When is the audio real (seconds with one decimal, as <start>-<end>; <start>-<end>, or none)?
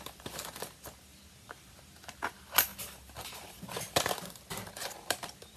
0.0-2.7